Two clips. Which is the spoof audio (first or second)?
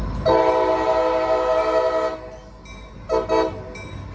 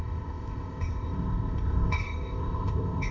second